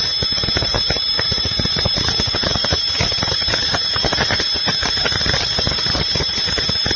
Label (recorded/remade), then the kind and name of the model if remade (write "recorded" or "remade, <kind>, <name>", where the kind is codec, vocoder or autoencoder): remade, vocoder, BigVGAN v2